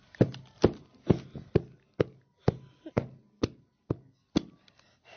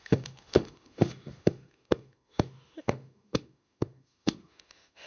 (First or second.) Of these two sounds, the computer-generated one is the second